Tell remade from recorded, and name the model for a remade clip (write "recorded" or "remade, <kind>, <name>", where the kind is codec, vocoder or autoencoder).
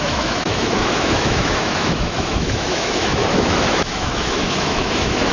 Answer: remade, autoencoder, DAC-VAE